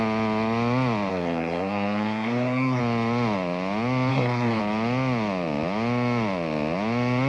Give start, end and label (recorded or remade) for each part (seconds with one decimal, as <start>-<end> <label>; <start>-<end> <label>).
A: 0.0-1.1 recorded; 1.1-2.8 remade; 2.8-4.1 recorded; 4.1-4.6 remade; 4.6-7.3 recorded